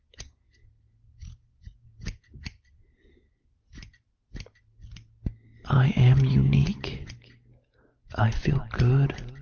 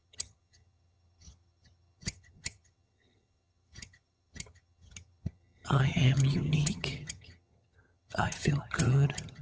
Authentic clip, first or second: first